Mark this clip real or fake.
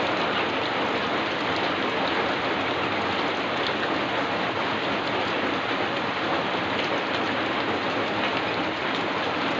real